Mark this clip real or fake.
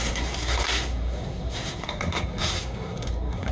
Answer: fake